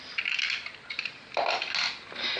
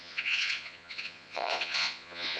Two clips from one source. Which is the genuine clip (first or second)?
first